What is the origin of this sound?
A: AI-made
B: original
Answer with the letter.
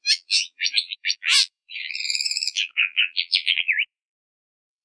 A